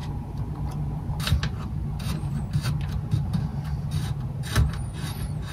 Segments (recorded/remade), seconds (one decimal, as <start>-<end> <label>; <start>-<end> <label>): 0.0-5.5 recorded